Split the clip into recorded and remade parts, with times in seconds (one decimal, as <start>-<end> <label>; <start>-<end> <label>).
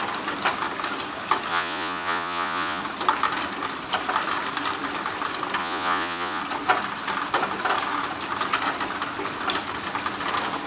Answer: 0.0-1.5 recorded; 1.5-2.8 remade; 2.8-5.6 recorded; 5.6-6.4 remade; 6.4-10.7 recorded